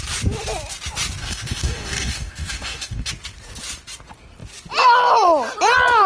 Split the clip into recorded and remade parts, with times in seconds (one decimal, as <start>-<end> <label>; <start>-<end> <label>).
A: 0.0-1.2 recorded; 1.2-3.1 remade; 3.1-6.1 recorded